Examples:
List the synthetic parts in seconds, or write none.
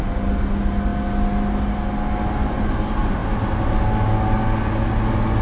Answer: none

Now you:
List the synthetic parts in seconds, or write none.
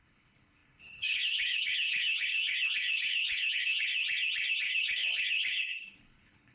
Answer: 0.0-3.9 (codec, HILCodec); 4.5-6.5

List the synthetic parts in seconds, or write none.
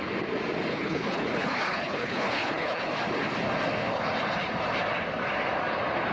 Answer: 0.7-2.9 (codec, HILCodec)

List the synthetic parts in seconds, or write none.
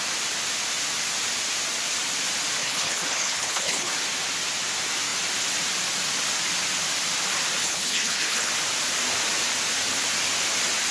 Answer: 2.6-3.9 (codec, HILCodec); 7.6-8.5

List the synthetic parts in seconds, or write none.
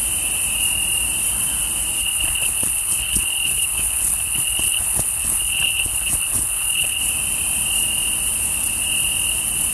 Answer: 2.0-7.0 (codec, HILCodec)